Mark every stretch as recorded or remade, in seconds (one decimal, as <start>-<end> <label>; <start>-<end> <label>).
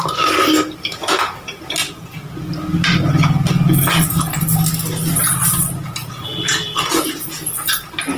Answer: 0.0-1.8 recorded; 1.8-2.5 remade; 2.5-6.0 recorded; 6.0-7.7 remade; 7.7-8.2 recorded